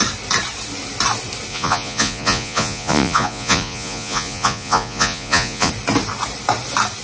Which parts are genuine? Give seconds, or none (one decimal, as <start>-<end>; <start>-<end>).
0.0-1.5; 5.7-7.0